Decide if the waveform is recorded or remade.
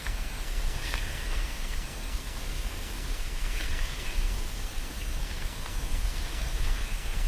remade